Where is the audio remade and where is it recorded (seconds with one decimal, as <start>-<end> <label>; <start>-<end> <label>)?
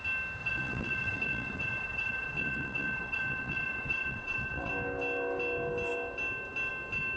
0.0-0.4 recorded; 0.4-4.7 remade; 4.7-7.2 recorded